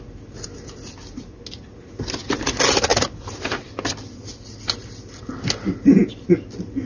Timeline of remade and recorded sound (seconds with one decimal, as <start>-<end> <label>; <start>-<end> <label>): 0.0-6.9 recorded